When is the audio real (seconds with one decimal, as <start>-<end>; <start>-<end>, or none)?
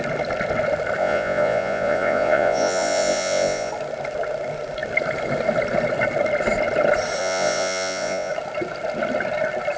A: 0.0-1.0; 3.7-7.2; 8.3-9.8